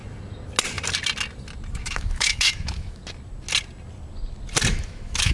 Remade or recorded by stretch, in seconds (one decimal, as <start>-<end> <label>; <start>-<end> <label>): 0.0-1.7 recorded; 1.7-3.0 remade; 3.0-4.7 recorded; 4.7-5.3 remade